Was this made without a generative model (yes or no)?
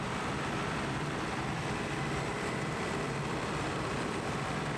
no